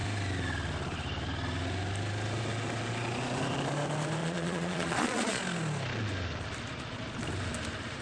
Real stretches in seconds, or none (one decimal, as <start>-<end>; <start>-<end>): 0.0-4.2; 5.4-8.0